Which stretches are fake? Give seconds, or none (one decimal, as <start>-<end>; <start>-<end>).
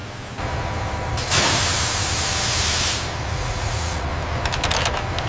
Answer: 3.2-4.1